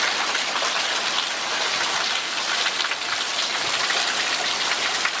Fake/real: fake